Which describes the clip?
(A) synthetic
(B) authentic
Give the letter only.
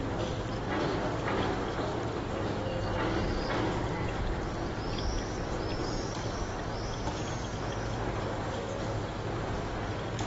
B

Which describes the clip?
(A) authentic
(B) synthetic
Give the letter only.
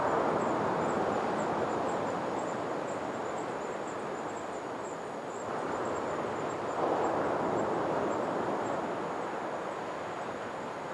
A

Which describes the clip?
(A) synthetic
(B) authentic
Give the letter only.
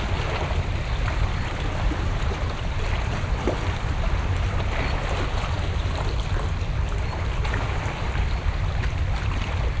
A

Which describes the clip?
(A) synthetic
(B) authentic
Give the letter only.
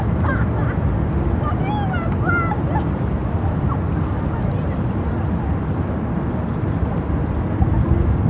B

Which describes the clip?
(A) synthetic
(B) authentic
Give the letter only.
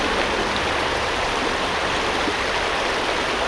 B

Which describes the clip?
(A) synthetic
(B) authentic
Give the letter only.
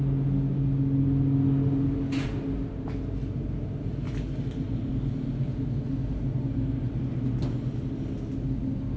B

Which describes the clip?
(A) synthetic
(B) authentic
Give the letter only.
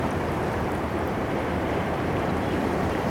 A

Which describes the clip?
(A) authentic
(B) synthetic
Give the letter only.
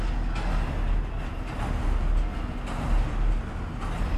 A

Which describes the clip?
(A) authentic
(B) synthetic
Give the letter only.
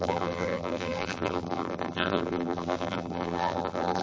B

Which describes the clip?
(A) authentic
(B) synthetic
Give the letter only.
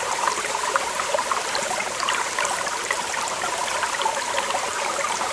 B